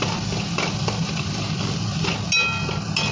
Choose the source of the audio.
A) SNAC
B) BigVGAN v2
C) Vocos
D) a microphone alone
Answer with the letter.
D